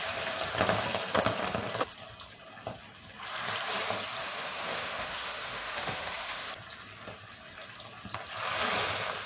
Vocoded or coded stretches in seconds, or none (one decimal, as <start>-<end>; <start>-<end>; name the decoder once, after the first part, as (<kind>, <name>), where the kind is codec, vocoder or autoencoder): 4.2-6.5 (autoencoder, DAC-VAE)